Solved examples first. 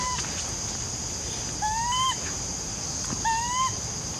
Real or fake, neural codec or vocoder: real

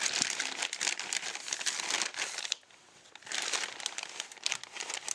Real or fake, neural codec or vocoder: real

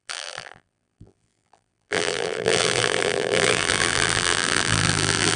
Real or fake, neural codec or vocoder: fake, vocoder, BigVGAN v2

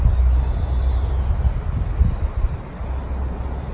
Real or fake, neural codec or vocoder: real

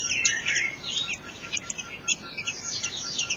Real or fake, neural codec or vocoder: fake, vocoder, BigVGAN v2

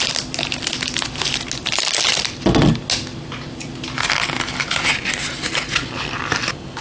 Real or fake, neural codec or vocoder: real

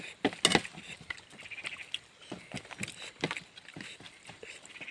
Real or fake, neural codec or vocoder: real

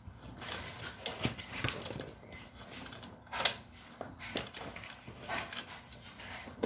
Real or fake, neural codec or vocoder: fake, vocoder, BigVGAN v2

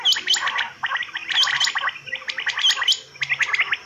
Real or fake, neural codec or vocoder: real